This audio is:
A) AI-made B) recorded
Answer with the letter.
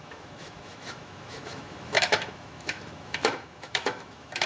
A